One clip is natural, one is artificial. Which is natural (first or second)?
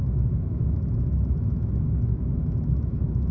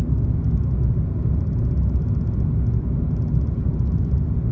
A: second